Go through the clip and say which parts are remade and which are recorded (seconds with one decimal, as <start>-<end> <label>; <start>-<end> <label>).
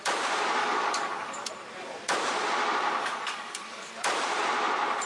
0.0-0.6 recorded; 0.6-1.5 remade; 1.5-3.0 recorded; 3.0-3.9 remade; 3.9-5.1 recorded